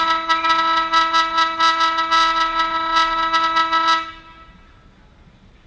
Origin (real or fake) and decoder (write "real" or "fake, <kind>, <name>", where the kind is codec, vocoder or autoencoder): real